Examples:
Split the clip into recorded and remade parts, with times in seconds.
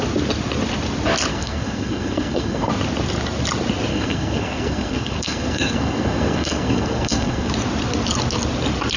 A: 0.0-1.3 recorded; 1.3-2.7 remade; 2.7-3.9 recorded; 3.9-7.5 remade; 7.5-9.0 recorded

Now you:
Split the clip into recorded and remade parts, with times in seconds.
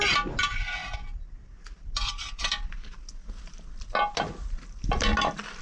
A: 0.0-5.6 recorded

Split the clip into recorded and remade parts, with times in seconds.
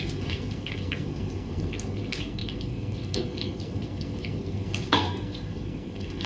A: 0.0-6.3 remade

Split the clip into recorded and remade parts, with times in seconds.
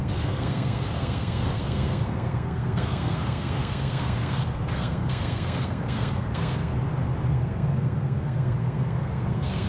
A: 0.0-6.7 remade; 6.7-7.3 recorded; 7.3-9.7 remade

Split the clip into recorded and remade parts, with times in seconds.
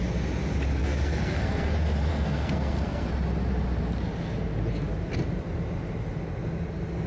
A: 0.0-0.8 recorded; 0.8-1.7 remade; 1.7-2.1 recorded; 2.1-3.1 remade; 3.1-7.1 recorded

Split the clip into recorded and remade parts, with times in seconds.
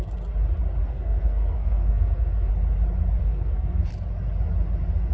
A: 0.0-0.9 recorded; 0.9-2.5 remade; 2.5-3.2 recorded; 3.2-3.9 remade; 3.9-5.1 recorded